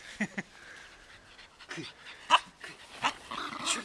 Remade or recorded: recorded